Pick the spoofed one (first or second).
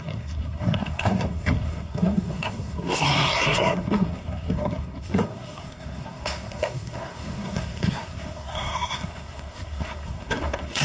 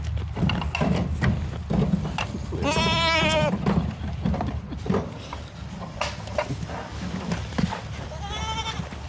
first